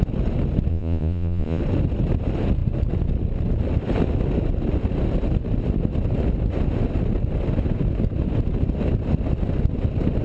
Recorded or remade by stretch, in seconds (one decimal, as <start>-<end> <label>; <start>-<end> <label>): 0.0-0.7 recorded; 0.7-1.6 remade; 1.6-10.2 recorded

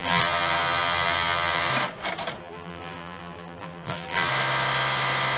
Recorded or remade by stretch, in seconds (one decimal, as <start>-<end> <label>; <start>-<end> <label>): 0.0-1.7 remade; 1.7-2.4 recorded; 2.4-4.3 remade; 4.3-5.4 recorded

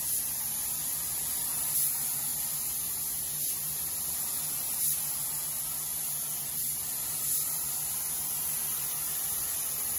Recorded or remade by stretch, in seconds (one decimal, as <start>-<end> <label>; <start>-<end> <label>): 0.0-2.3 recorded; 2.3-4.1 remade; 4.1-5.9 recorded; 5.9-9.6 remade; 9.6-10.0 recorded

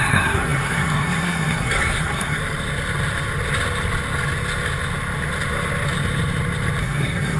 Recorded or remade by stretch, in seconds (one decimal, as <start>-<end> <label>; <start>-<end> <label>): 0.0-2.4 remade; 2.4-6.8 recorded; 6.8-7.4 remade